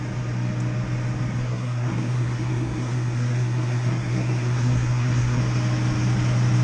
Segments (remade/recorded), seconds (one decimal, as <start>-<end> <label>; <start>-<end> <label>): 0.0-1.4 recorded; 1.4-5.4 remade; 5.4-6.6 recorded